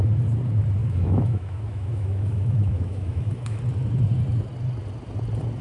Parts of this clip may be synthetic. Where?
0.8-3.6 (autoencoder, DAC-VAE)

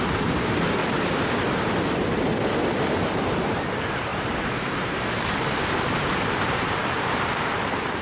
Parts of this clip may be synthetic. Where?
2.6-3.6 (vocoder, BigVGAN v2); 4.1-6.8

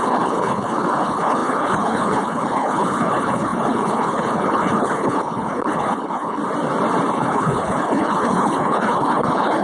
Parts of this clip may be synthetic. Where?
0.0-6.4 (codec, HILCodec); 7.1-9.6

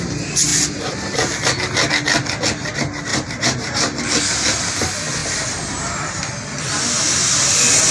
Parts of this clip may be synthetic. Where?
3.1-4.0 (vocoder, BigVGAN v2); 5.2-6.2

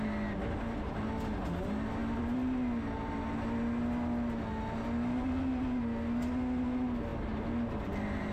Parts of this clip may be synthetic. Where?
none

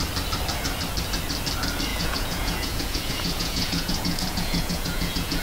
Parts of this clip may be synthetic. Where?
1.9-5.4 (vocoder, Vocos)

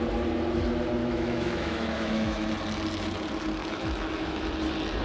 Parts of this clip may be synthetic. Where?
1.0-2.5 (autoencoder, DAC-VAE); 3.6-4.5